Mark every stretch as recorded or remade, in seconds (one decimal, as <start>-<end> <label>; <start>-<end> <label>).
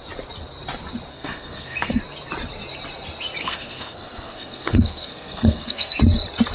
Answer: 0.0-1.1 recorded; 1.1-2.0 remade; 2.0-3.4 recorded; 3.4-6.0 remade; 6.0-6.5 recorded